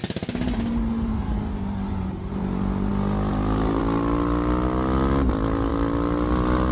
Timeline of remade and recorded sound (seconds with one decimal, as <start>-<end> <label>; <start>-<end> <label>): 0.0-2.9 remade; 2.9-3.3 recorded; 3.3-3.8 remade; 3.8-6.7 recorded

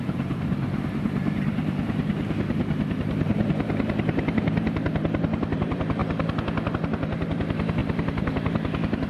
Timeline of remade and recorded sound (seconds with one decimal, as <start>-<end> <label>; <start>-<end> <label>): 0.0-6.0 remade; 6.0-6.7 recorded; 6.7-9.1 remade